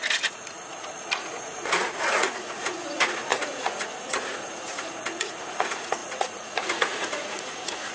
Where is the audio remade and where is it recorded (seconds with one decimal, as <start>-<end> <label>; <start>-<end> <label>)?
0.0-7.9 remade